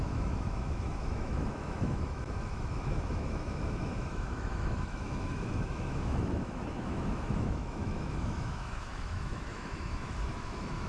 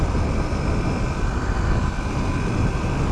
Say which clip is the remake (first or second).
first